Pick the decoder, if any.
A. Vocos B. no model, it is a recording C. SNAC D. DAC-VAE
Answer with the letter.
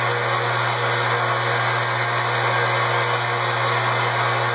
B